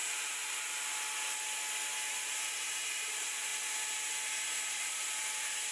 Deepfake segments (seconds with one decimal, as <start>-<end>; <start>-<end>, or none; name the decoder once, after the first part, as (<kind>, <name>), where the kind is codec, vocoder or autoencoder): 2.5-3.5 (vocoder, BigVGAN v2); 4.7-5.7